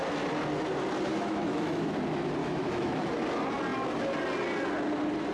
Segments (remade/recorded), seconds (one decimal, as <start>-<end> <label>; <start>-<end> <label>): 0.0-1.1 recorded; 1.1-1.9 remade; 1.9-2.4 recorded; 2.4-3.1 remade; 3.1-5.3 recorded